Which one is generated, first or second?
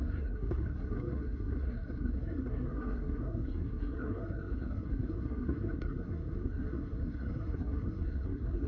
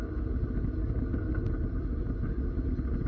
first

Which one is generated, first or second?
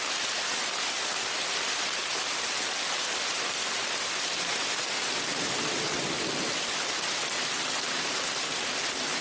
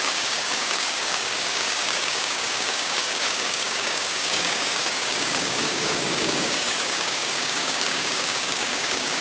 second